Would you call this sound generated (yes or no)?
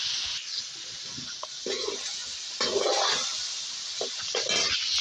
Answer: no